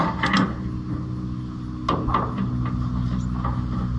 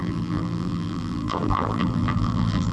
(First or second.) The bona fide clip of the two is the first